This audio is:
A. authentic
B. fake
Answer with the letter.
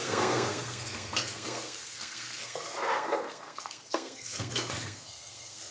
B